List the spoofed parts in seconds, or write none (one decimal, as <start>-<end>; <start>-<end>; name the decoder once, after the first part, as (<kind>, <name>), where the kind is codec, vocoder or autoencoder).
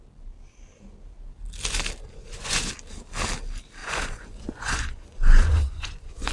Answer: 2.1-2.7 (vocoder, Vocos); 3.8-6.3